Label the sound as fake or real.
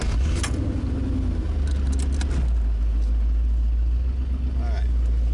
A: real